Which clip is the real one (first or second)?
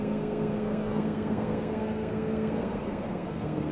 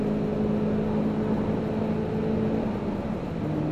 second